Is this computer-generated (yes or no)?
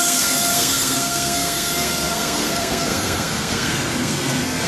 yes